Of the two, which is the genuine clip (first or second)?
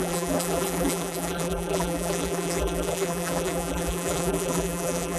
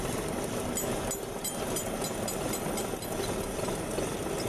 second